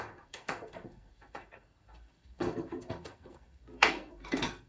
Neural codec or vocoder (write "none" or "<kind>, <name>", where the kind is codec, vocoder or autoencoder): codec, SNAC